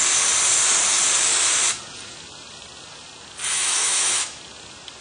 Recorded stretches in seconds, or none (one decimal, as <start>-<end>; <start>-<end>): 0.0-3.5; 4.4-5.0